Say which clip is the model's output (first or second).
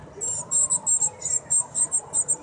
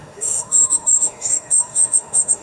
second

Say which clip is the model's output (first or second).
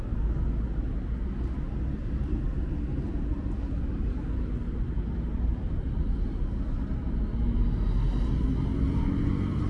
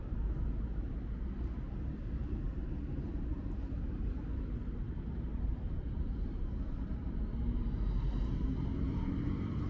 second